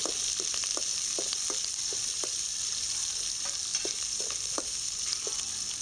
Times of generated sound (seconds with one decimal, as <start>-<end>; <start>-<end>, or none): none